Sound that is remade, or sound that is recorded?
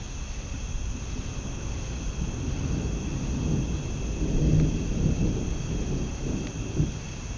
recorded